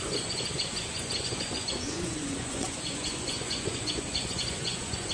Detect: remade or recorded remade